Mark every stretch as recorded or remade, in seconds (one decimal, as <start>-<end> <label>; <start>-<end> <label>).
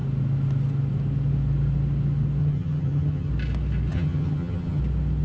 0.0-2.4 recorded; 2.4-3.3 remade; 3.3-3.9 recorded; 3.9-4.8 remade; 4.8-5.2 recorded